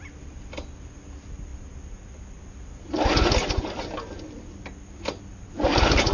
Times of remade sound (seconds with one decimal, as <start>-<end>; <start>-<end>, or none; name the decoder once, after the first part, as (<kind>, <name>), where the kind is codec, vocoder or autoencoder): none